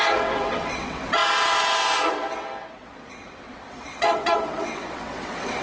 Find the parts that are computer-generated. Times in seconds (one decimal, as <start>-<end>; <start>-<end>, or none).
0.0-5.6